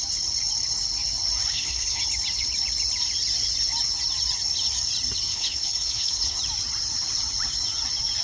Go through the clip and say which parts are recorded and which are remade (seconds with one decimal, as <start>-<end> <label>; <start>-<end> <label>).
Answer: 0.0-1.4 recorded; 1.4-2.0 remade; 2.0-5.3 recorded; 5.3-6.4 remade; 6.4-8.2 recorded